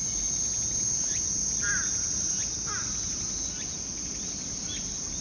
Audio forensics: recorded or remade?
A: recorded